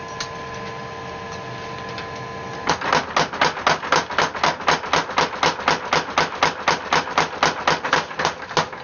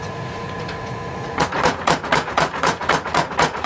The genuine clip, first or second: first